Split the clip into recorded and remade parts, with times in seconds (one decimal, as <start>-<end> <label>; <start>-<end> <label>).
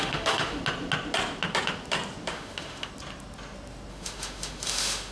0.0-0.6 remade; 0.6-2.3 recorded; 2.3-2.9 remade; 2.9-3.9 recorded; 3.9-5.1 remade